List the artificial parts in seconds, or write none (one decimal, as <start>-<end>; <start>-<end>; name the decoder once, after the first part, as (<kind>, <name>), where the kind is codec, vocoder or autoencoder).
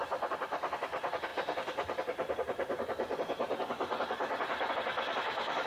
1.3-4.7 (vocoder, BigVGAN v2)